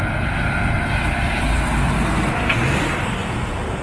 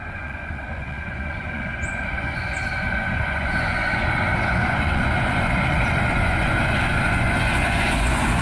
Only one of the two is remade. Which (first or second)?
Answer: second